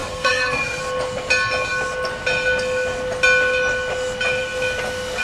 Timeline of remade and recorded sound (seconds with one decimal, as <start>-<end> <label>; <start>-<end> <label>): 0.0-0.8 remade; 0.8-5.2 recorded